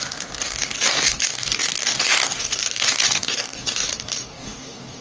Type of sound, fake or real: fake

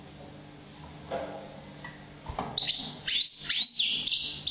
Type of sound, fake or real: real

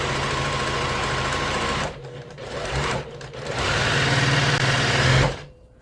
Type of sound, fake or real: fake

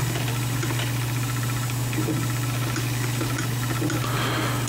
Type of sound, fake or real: real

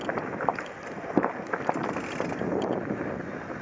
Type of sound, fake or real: real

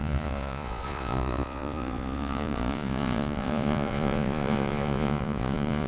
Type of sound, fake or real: fake